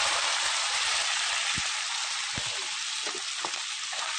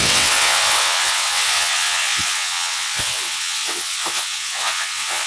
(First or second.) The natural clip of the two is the first